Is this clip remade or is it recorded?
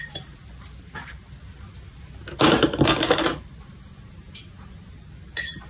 recorded